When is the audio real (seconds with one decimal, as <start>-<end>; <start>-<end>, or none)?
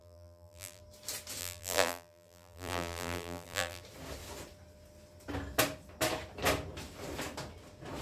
0.8-1.4; 3.8-8.0